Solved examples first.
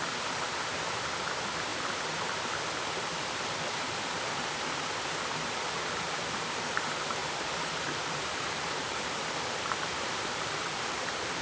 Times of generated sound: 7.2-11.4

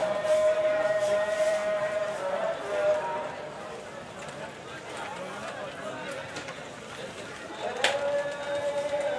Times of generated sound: 0.9-1.6; 2.2-5.1; 6.8-9.2

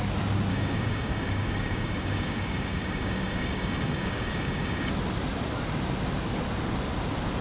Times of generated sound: 0.5-4.9

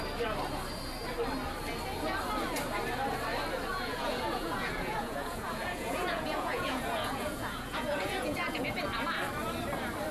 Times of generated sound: 3.7-8.7

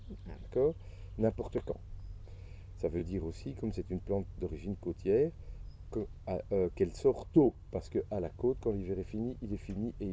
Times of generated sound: 1.0-1.7; 7.2-7.9

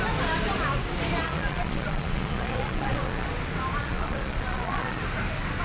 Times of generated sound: 1.2-3.3; 3.8-5.0

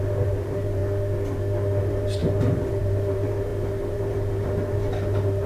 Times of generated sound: 0.0-0.8; 1.8-5.5